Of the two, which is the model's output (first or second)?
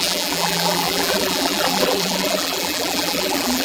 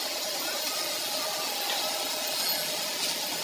first